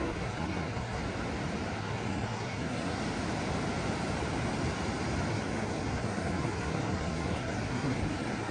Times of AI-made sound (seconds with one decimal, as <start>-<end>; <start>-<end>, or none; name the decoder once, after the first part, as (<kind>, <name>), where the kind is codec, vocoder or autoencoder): 0.0-1.0 (codec, SNAC); 1.8-3.0; 5.3-8.5